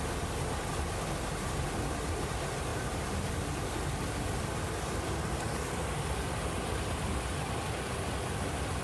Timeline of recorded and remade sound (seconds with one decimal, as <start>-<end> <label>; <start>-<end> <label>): 0.0-2.7 recorded; 2.7-3.3 remade; 3.3-8.8 recorded